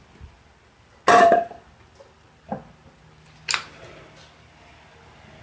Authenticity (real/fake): real